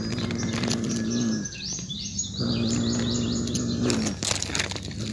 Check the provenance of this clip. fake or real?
real